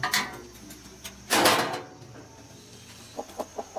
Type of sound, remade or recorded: recorded